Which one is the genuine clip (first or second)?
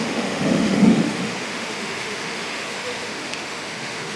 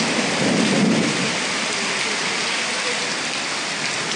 second